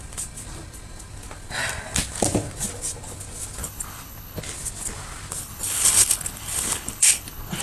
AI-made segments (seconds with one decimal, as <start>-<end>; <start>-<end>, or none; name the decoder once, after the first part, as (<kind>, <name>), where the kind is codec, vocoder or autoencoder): 3.6-4.4 (codec, HILCodec); 5.4-7.6